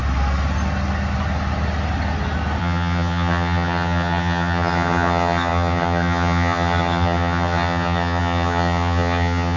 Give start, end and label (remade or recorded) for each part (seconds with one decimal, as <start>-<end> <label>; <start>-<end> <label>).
0.0-2.6 recorded; 2.6-9.6 remade